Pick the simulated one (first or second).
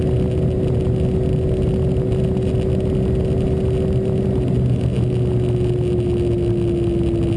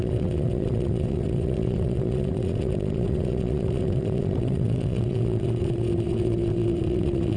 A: second